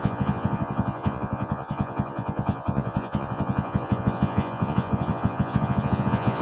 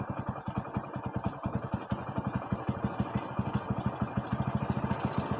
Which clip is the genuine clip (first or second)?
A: second